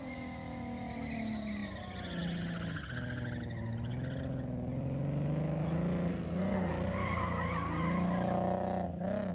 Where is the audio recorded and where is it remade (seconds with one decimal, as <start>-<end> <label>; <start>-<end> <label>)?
0.0-6.1 recorded; 6.1-6.7 remade; 6.7-9.3 recorded

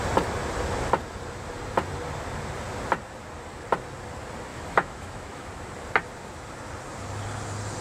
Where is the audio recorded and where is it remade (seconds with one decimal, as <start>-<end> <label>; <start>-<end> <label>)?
0.0-4.5 recorded; 4.5-5.5 remade; 5.5-7.8 recorded

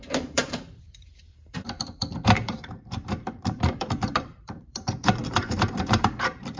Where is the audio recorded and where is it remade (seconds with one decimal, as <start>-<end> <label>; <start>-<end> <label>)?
0.0-6.6 remade

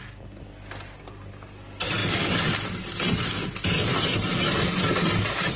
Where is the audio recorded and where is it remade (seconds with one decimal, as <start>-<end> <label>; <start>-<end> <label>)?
0.0-5.6 recorded

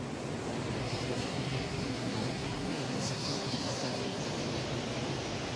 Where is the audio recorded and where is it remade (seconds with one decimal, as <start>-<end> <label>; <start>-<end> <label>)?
0.0-0.8 recorded; 0.8-4.2 remade; 4.2-5.6 recorded

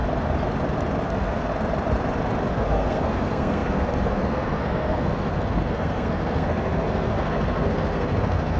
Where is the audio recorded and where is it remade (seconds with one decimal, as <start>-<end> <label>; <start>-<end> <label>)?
0.0-1.0 recorded; 1.0-1.5 remade; 1.5-2.5 recorded; 2.5-8.6 remade